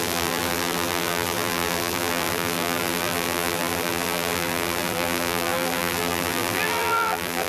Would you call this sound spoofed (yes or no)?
yes